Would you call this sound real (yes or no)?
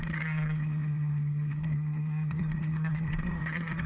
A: no